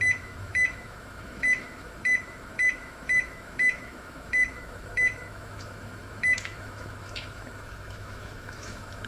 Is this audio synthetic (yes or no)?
yes